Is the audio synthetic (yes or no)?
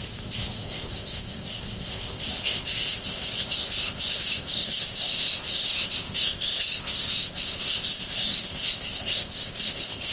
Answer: yes